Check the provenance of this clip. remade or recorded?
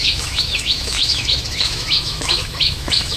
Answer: remade